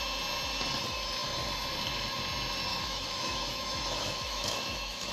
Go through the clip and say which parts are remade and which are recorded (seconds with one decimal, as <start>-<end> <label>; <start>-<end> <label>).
0.0-2.7 recorded; 2.7-5.1 remade